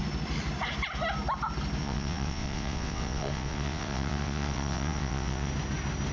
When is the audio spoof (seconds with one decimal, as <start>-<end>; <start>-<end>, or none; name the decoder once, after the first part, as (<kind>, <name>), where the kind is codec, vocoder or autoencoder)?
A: 1.8-5.5 (vocoder, WaveNeXt)